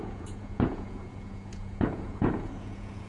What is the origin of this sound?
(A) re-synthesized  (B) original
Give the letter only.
A